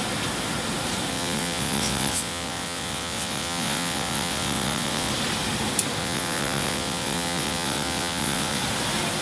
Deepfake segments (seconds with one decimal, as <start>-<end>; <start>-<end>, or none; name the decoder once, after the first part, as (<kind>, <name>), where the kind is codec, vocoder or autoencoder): 1.1-5.1 (vocoder, WaveNeXt); 6.0-8.6